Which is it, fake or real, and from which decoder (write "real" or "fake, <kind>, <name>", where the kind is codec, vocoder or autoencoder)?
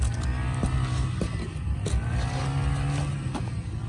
real